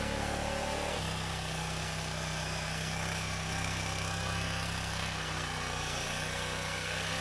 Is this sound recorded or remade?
remade